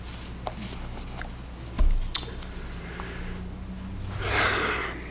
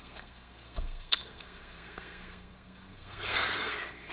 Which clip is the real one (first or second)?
first